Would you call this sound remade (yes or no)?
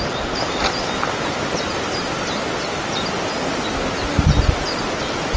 no